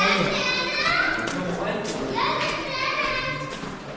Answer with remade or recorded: recorded